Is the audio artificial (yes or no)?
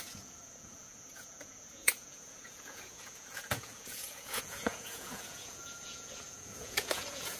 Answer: yes